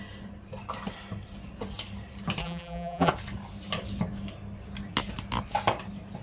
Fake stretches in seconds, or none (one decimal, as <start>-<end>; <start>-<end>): 2.4-3.1